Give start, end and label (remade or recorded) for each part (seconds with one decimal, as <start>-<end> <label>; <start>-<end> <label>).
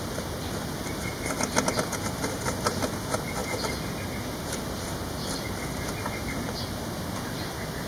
0.0-7.9 recorded